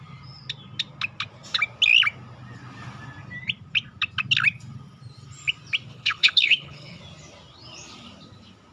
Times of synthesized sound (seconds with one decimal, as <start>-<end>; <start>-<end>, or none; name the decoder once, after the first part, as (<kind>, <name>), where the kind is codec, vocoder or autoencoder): 5.9-7.0 (codec, HILCodec)